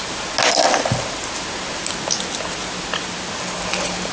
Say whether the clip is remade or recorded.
recorded